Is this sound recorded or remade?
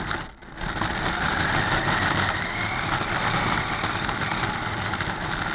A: recorded